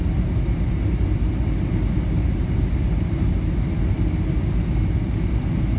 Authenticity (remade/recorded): recorded